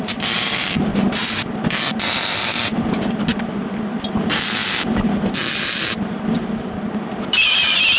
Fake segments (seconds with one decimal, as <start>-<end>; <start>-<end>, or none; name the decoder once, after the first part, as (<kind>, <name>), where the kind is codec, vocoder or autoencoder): 0.0-0.9 (vocoder, BigVGAN v2); 1.7-8.0